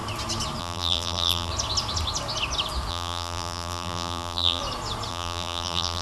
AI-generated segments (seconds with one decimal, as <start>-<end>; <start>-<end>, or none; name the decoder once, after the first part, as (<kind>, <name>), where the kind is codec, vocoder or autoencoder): 0.6-1.5 (vocoder, BigVGAN v2); 2.9-4.6; 5.1-6.0